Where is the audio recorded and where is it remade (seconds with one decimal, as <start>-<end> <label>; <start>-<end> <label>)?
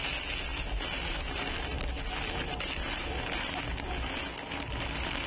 0.0-5.3 recorded